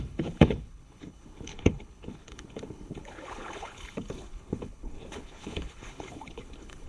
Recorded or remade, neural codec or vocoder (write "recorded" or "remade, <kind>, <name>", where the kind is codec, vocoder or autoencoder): remade, codec, HILCodec